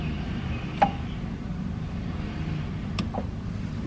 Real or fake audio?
fake